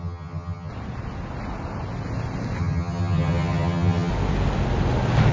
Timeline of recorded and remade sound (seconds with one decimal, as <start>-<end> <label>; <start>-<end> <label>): 0.0-0.7 remade; 0.7-2.6 recorded; 2.6-4.1 remade; 4.1-5.3 recorded